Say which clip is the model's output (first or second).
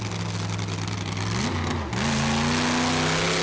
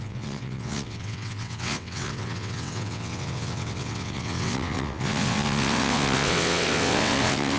second